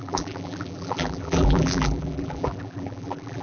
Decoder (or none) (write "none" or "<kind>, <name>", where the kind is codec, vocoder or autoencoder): vocoder, BigVGAN v2